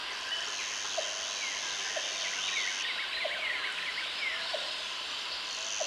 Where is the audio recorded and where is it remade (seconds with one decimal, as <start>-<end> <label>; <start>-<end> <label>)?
0.0-5.9 recorded